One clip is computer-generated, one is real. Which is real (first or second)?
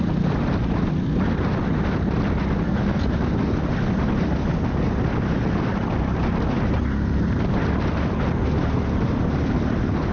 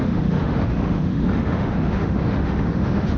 first